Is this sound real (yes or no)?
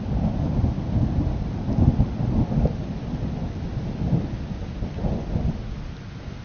yes